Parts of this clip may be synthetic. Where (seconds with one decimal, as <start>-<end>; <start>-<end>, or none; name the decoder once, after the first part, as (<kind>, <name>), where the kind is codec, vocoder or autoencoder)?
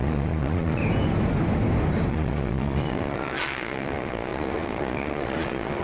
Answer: 0.0-0.8 (vocoder, Vocos); 2.1-5.8